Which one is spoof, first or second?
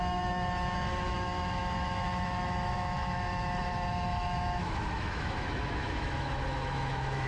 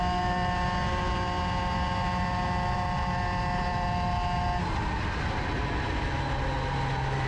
first